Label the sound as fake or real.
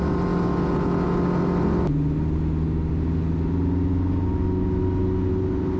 real